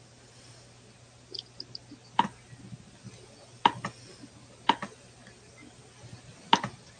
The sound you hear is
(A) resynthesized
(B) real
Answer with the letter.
B